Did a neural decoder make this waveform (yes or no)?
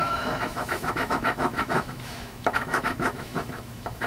yes